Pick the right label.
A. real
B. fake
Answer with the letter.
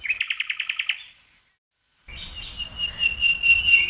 A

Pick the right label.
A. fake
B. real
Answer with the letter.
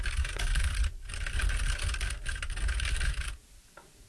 B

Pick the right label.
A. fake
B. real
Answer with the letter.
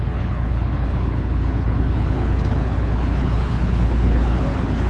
A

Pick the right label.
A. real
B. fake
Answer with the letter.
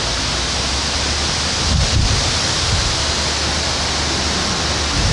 A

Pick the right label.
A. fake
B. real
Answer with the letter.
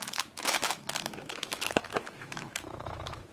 A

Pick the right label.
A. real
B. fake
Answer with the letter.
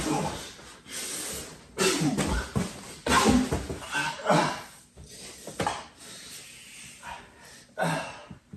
A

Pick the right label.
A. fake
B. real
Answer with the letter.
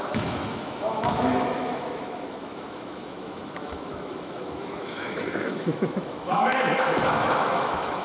A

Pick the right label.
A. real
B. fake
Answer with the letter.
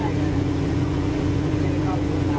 B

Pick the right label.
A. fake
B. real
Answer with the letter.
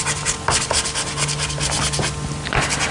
B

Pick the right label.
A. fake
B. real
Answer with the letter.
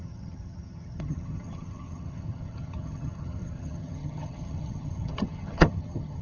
A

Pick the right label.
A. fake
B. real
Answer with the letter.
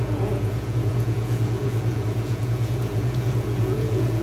A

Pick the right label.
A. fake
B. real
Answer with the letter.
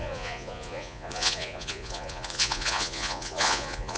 A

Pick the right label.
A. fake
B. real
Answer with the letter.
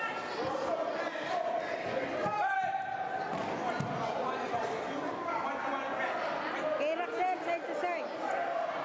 B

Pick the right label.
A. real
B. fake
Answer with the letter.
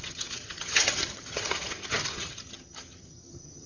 B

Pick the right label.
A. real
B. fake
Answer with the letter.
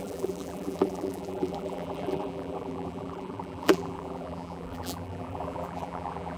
B